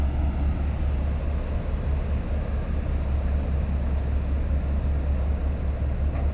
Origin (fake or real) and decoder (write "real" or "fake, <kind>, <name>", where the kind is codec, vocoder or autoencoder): real